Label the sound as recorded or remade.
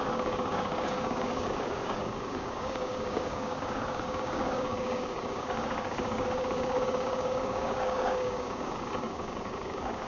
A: remade